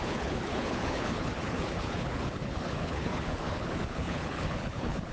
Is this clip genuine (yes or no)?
no